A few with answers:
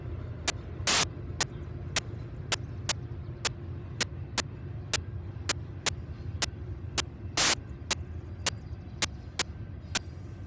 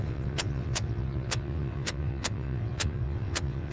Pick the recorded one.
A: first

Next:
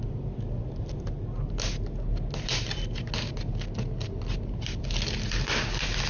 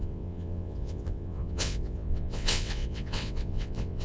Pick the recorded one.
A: first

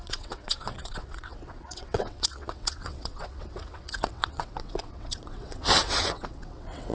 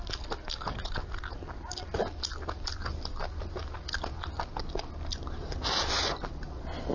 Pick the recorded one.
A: second